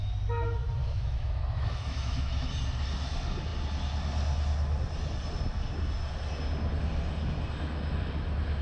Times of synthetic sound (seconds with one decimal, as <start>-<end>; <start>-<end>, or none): 0.8-2.5